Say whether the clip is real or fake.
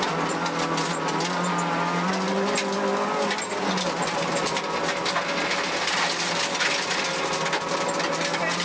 real